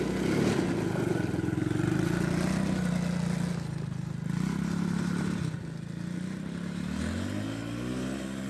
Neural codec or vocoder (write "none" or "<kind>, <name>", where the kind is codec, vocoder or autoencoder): none